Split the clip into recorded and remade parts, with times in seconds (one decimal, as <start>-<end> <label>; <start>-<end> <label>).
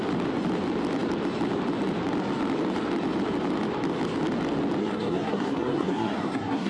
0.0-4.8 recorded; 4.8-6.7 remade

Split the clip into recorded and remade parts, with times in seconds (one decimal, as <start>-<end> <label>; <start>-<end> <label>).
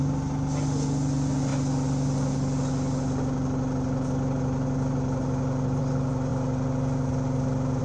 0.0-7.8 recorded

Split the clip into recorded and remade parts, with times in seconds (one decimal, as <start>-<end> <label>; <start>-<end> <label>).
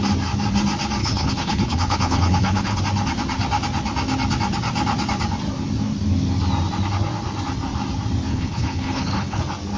0.0-1.0 recorded; 1.0-2.8 remade; 2.8-8.3 recorded; 8.3-9.4 remade; 9.4-9.8 recorded